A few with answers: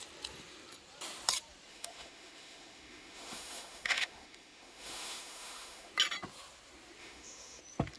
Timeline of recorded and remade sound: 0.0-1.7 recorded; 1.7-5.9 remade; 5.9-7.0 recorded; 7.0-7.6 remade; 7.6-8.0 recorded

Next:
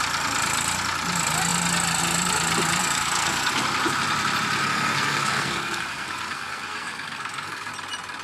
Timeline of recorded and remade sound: 0.0-2.8 recorded; 2.8-3.5 remade; 3.5-4.6 recorded; 4.6-7.7 remade; 7.7-8.2 recorded

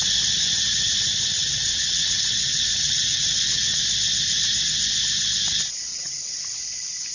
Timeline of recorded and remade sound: 0.0-1.4 recorded; 1.4-3.8 remade; 3.8-5.9 recorded; 5.9-6.4 remade; 6.4-7.1 recorded

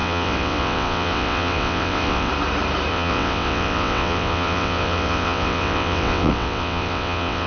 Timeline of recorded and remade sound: 0.0-2.3 remade; 2.3-2.9 recorded; 2.9-7.5 remade

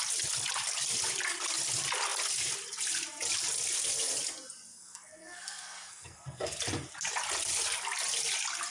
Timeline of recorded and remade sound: 0.0-4.7 recorded; 4.7-6.6 remade; 6.6-8.7 recorded